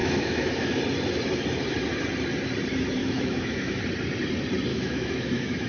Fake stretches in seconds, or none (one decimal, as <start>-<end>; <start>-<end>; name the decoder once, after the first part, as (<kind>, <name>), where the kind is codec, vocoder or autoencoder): 0.0-0.8 (autoencoder, DAC-VAE); 3.0-3.8; 4.7-5.7